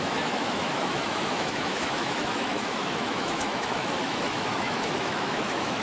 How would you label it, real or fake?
fake